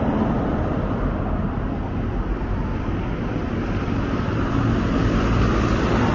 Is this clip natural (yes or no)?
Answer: yes